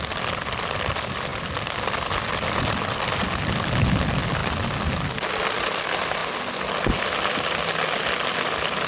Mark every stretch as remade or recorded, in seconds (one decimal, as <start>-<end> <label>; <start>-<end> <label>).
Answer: 0.0-8.9 recorded